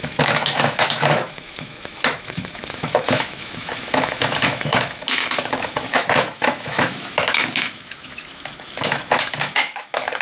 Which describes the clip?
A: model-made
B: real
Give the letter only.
A